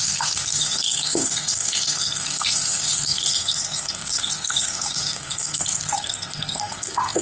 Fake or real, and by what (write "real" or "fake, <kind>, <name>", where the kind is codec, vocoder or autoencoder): fake, codec, SNAC